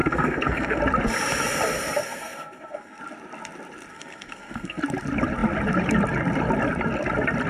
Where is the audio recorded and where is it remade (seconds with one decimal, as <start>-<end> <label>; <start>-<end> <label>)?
0.0-0.8 remade; 0.8-2.0 recorded; 2.0-3.0 remade; 3.0-3.9 recorded; 3.9-4.8 remade; 4.8-7.5 recorded